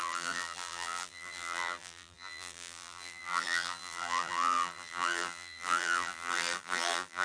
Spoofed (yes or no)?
yes